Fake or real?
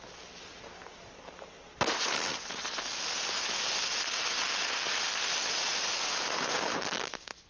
real